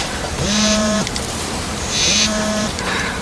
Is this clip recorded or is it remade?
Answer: remade